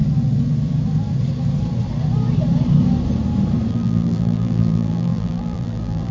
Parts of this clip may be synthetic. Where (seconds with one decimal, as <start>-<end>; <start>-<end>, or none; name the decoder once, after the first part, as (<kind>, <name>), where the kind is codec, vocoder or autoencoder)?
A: 3.7-6.1 (vocoder, BigVGAN v2)